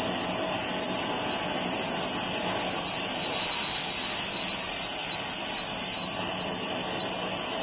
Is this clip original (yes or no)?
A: yes